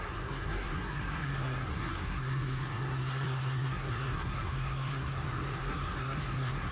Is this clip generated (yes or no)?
yes